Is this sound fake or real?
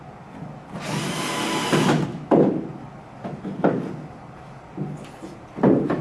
real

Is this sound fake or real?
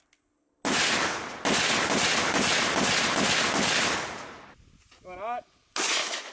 real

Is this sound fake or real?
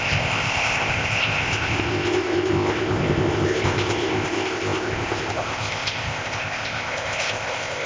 fake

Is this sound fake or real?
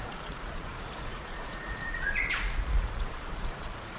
fake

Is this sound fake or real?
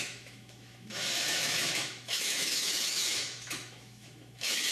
fake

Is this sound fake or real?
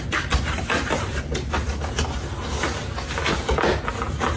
real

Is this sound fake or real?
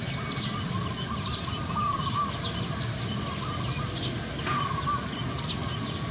real